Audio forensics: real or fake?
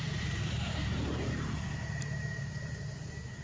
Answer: fake